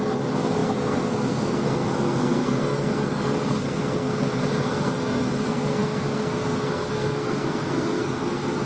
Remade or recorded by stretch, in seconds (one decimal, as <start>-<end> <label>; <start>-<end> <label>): 0.0-8.7 remade